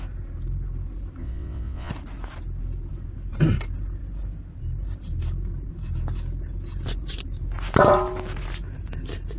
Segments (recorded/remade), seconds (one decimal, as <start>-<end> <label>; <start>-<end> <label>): 0.0-1.2 recorded; 1.2-1.9 remade; 1.9-9.4 recorded